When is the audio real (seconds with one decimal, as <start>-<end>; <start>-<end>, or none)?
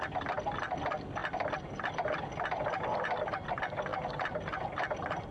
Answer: 0.0-3.9; 4.6-5.3